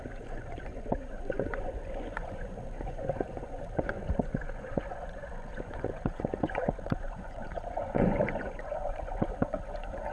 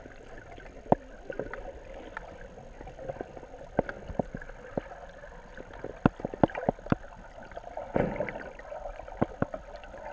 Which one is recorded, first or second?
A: second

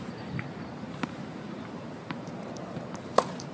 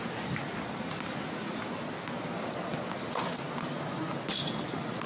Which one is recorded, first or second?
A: second